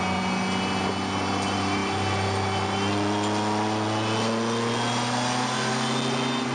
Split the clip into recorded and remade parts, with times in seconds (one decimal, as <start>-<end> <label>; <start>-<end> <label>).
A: 0.0-6.5 recorded